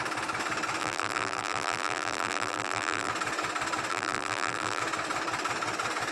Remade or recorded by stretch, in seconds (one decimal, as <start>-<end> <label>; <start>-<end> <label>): 0.0-0.8 recorded; 0.8-3.1 remade; 3.1-3.9 recorded; 3.9-4.8 remade; 4.8-6.1 recorded